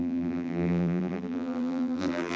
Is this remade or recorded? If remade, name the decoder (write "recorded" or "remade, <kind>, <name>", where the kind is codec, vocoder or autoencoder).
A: remade, vocoder, BigVGAN v2